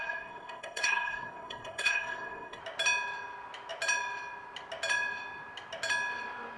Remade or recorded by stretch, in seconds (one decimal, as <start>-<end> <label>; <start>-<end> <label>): 0.0-2.6 remade; 2.6-6.6 recorded